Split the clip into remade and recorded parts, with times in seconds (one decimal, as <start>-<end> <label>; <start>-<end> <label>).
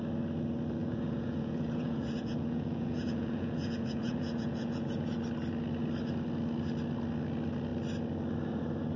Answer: 0.0-0.8 recorded; 0.8-5.2 remade; 5.2-9.0 recorded